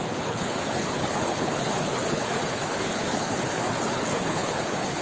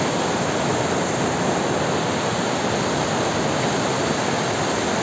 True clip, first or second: second